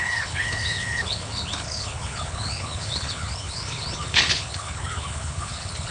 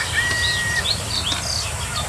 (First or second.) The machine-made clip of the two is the first